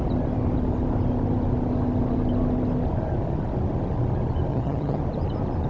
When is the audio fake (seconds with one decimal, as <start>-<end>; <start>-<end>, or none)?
4.5-5.0